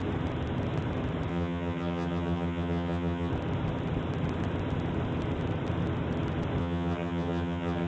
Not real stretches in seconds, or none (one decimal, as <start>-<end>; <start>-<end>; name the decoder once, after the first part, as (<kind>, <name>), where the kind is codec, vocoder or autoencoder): 1.3-3.3 (vocoder, HiFi-GAN); 6.6-7.9